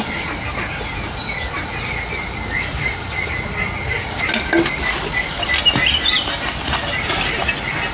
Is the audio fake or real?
real